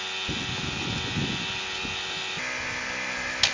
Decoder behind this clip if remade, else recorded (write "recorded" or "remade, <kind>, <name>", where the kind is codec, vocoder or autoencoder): recorded